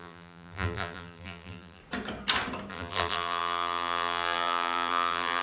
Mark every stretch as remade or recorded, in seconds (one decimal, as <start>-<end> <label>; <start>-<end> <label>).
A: 0.0-1.8 remade; 1.8-2.7 recorded; 2.7-5.4 remade

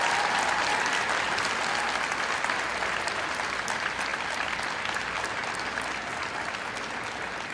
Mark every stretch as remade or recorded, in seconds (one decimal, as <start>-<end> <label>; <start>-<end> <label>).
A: 0.0-7.5 recorded